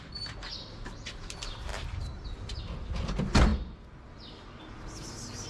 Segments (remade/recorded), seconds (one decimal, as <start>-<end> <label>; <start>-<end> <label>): 0.0-5.5 recorded